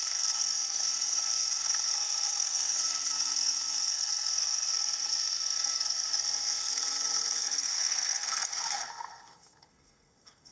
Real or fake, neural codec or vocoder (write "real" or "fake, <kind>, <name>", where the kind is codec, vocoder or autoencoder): fake, codec, SNAC